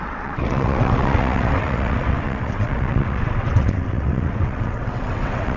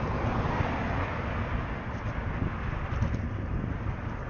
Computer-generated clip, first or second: first